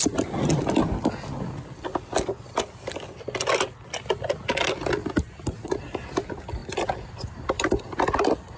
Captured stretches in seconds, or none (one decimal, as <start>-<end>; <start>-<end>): 0.0-8.6